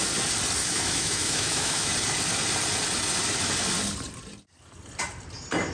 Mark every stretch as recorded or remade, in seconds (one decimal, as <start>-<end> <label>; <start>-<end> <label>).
0.0-0.6 recorded; 0.6-1.9 remade; 1.9-5.7 recorded